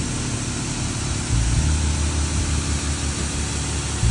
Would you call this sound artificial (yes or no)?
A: no